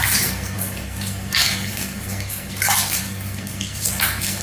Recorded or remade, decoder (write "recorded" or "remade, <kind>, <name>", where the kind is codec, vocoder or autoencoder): remade, codec, SNAC